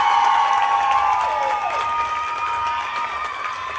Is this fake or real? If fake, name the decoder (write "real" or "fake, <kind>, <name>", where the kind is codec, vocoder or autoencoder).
real